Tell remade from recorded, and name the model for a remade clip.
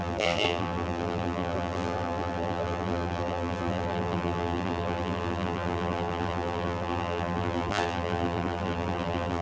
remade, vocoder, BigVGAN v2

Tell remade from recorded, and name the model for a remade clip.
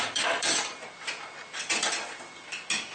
remade, vocoder, BigVGAN v2